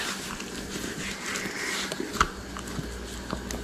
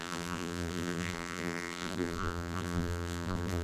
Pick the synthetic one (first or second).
second